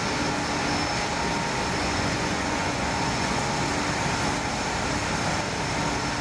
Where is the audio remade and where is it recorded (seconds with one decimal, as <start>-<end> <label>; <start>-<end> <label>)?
0.0-1.8 recorded; 1.8-3.4 remade; 3.4-6.2 recorded